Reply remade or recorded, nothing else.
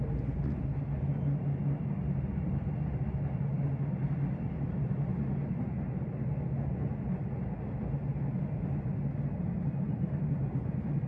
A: recorded